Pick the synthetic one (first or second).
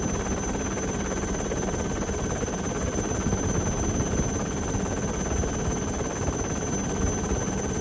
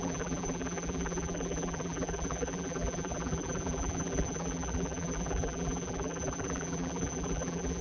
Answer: second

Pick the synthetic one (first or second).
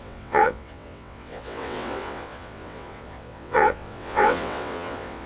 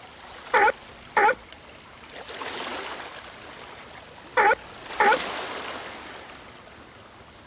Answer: first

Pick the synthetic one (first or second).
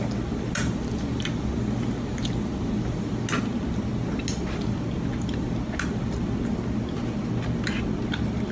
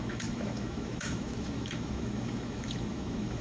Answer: second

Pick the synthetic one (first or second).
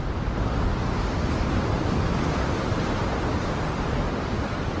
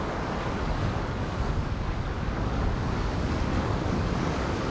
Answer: second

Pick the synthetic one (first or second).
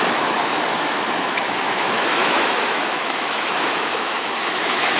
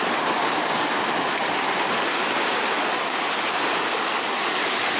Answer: first